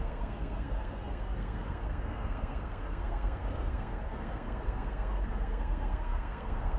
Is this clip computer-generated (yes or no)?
yes